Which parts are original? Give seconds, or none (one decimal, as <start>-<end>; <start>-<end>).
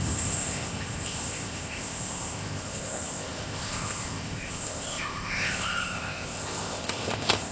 none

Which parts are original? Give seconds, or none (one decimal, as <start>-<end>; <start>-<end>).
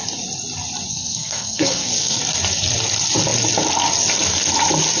0.0-0.9; 2.2-5.0